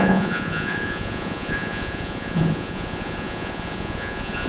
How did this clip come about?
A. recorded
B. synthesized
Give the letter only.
B